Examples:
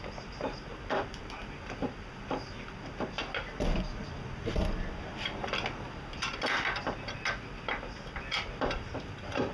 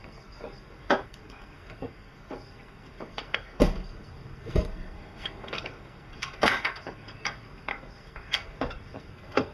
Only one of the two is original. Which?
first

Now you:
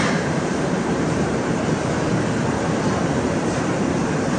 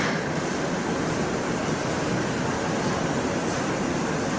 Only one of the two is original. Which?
second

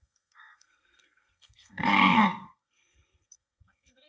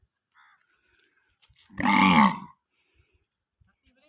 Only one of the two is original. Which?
second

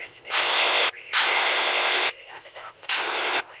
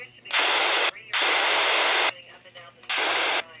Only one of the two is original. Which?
second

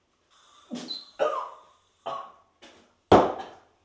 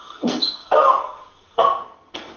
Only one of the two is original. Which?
first